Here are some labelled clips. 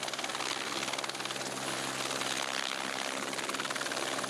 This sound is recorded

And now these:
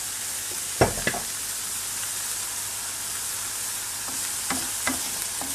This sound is recorded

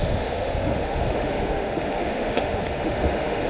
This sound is remade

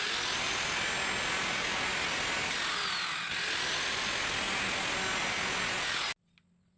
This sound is recorded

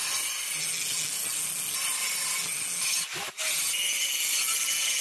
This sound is recorded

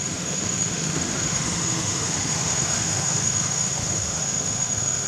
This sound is remade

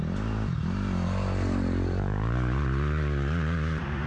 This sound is recorded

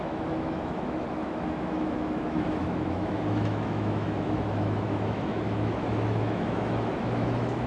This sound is remade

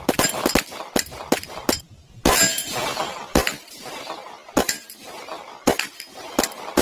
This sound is recorded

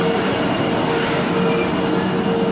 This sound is recorded